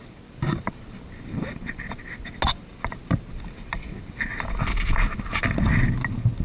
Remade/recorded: recorded